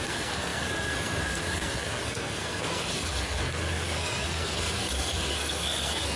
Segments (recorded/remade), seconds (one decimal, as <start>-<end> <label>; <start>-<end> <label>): 0.0-6.2 remade